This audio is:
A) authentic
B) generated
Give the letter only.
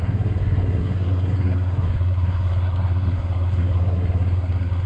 B